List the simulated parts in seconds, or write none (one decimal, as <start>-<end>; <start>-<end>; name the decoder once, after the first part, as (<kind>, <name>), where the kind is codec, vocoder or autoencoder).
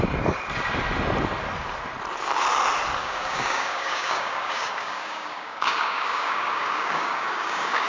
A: 3.0-7.9 (codec, DAC)